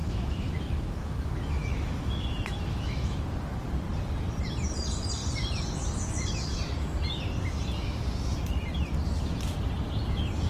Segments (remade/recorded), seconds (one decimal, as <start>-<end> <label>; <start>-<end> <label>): 0.0-3.2 remade; 3.2-10.5 recorded